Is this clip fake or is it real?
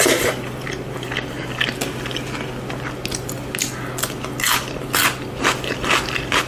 real